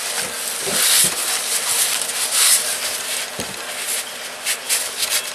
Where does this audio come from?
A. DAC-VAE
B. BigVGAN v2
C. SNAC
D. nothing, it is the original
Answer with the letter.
D